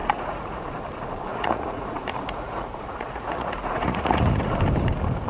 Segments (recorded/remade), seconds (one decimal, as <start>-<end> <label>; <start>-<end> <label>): 0.0-0.6 remade; 0.6-1.3 recorded; 1.3-4.5 remade; 4.5-5.3 recorded

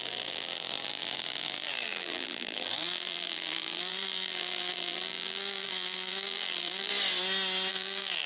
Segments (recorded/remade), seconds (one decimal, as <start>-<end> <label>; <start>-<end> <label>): 0.0-6.9 remade; 6.9-7.7 recorded; 7.7-8.3 remade

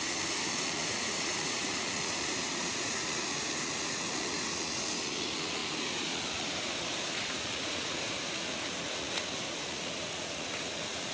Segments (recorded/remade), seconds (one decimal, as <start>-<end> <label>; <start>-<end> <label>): 0.0-11.1 remade

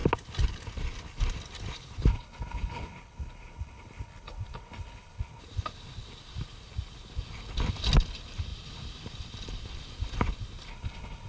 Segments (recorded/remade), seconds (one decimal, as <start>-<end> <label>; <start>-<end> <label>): 0.0-2.1 recorded; 2.1-5.4 remade; 5.4-10.7 recorded; 10.7-11.3 remade

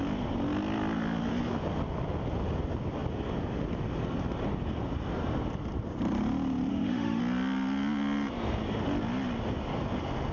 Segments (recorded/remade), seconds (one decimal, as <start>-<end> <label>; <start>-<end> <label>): 0.0-6.7 recorded; 6.7-7.2 remade; 7.2-10.3 recorded

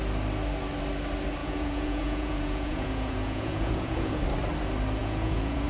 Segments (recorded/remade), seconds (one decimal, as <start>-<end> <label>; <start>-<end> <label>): 0.0-1.4 recorded; 1.4-4.2 remade; 4.2-5.0 recorded; 5.0-5.7 remade

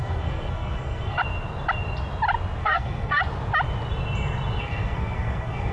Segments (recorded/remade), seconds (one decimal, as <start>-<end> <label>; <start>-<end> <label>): 0.0-1.2 remade; 1.2-2.6 recorded; 2.6-3.2 remade; 3.2-4.6 recorded; 4.6-5.7 remade

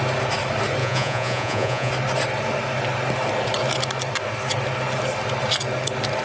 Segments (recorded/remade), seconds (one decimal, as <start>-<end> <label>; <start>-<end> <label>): 0.0-0.8 recorded; 0.8-1.9 remade; 1.9-6.2 recorded